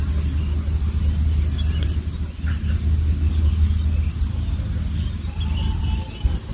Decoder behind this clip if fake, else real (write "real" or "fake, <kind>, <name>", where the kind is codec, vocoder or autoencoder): real